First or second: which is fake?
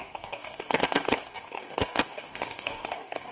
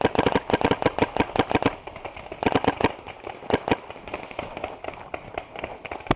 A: first